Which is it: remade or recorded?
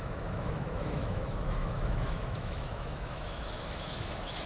remade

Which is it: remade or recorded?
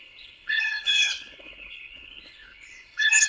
remade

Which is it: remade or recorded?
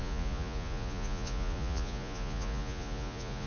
remade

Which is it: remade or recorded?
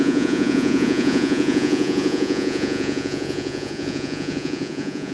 remade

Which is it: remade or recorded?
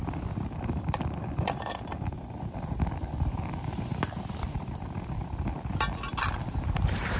remade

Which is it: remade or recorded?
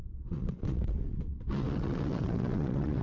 remade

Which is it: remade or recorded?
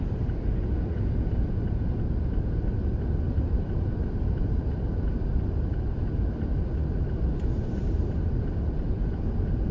recorded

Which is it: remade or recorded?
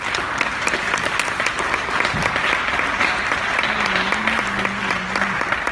recorded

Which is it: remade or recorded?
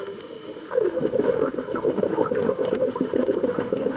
remade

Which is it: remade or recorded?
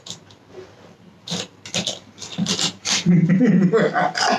recorded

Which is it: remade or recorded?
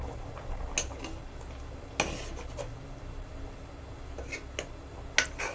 recorded